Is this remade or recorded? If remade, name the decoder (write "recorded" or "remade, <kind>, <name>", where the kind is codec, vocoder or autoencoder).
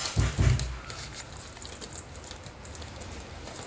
recorded